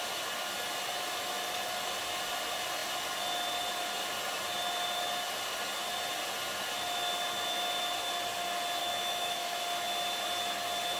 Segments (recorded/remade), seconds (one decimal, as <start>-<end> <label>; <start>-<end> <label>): 0.0-8.8 recorded; 8.8-9.6 remade; 9.6-11.0 recorded